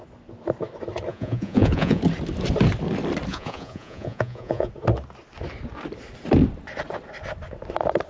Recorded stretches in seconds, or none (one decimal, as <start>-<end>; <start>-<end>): 0.0-1.1; 2.0-3.3; 4.7-8.1